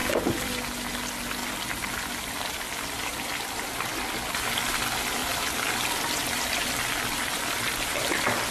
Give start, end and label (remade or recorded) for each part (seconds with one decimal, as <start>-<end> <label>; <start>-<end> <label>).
0.0-0.9 remade; 0.9-1.4 recorded; 1.4-1.9 remade; 1.9-3.1 recorded; 3.1-4.0 remade; 4.0-5.2 recorded; 5.2-6.7 remade; 6.7-8.5 recorded